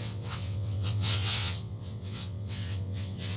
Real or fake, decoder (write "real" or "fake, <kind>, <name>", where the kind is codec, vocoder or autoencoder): fake, vocoder, WaveNeXt